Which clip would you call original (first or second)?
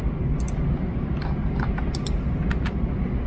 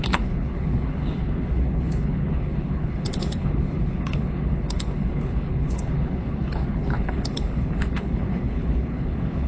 first